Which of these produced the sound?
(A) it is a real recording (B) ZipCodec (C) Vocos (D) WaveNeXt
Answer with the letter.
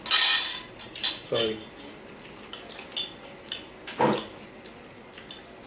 A